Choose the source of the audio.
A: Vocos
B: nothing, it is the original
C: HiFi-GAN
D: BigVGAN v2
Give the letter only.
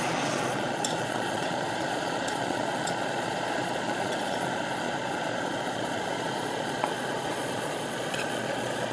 A